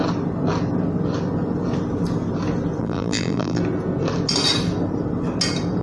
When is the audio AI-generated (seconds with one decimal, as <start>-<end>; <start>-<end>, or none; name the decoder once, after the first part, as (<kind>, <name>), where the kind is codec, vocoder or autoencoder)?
2.8-3.6 (vocoder, BigVGAN v2)